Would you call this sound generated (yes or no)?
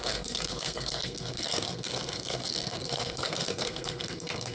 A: yes